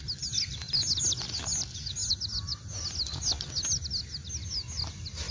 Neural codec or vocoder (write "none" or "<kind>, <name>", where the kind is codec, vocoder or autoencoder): none